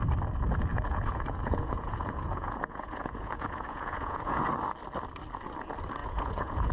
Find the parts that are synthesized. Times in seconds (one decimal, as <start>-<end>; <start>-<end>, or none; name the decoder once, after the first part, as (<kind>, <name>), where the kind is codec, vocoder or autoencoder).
0.7-4.4 (vocoder, Vocos); 6.0-6.7